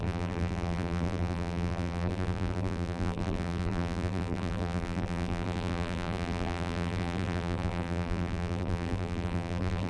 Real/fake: fake